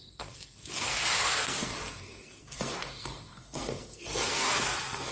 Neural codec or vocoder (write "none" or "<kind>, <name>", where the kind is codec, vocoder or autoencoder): codec, SNAC